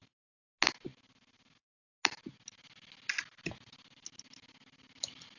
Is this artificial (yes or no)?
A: no